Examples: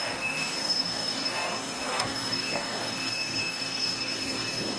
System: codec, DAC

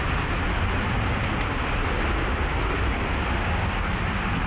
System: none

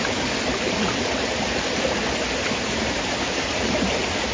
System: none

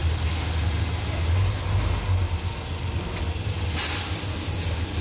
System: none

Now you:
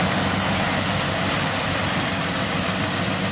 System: none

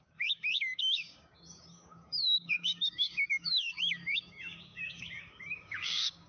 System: codec, DAC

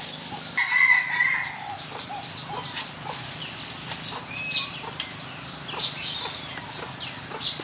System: none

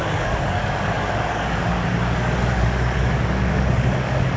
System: codec, DAC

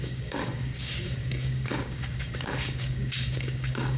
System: codec, DAC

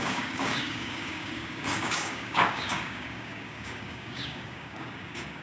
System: codec, DAC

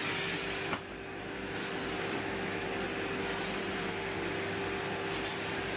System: none